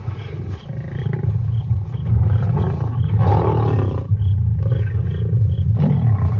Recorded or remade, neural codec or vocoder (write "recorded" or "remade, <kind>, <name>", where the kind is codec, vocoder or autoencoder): recorded